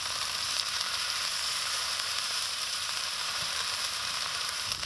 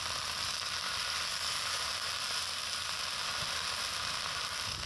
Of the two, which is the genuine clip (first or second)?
second